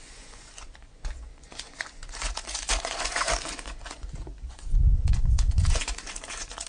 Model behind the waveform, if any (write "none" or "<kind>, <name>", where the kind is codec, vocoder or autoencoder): vocoder, Vocos